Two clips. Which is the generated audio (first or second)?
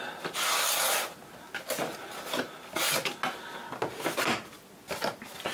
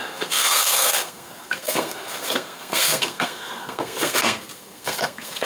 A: second